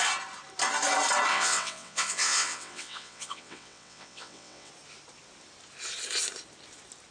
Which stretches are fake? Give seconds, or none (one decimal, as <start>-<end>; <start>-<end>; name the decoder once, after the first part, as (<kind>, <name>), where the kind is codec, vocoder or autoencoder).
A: 1.3-4.7 (vocoder, WaveNeXt)